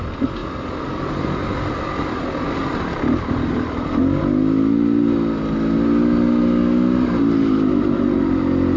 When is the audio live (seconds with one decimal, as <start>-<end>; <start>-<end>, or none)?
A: 0.0-8.8